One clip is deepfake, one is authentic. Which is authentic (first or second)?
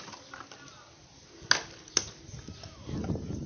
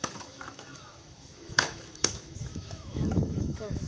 first